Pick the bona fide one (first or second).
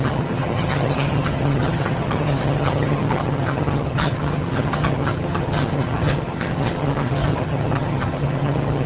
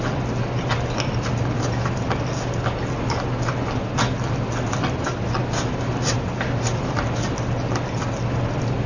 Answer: second